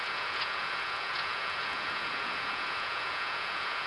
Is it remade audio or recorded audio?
remade